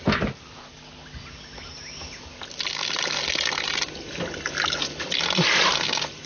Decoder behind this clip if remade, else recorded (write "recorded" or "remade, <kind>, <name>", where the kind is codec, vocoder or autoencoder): recorded